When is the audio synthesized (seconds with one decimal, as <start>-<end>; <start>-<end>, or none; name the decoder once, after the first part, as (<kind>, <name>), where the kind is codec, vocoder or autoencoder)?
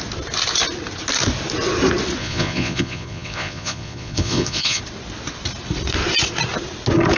2.2-4.8 (vocoder, Vocos)